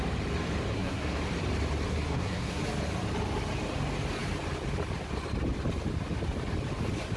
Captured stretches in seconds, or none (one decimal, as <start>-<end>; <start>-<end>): 0.0-0.7; 1.2-1.9; 2.6-7.2

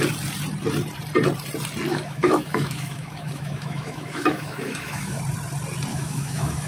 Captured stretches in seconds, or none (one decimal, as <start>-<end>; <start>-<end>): 0.0-1.9; 5.2-5.9

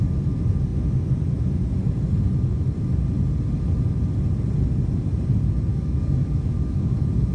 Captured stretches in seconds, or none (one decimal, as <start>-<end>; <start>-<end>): 0.0-5.7

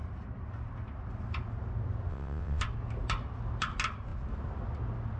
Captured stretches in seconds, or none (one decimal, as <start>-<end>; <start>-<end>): 0.0-2.1; 2.6-5.2